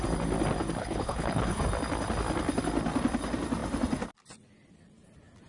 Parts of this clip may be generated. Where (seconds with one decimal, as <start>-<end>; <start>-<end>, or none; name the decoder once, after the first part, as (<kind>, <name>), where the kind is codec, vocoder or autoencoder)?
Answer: 0.8-1.6 (codec, HILCodec)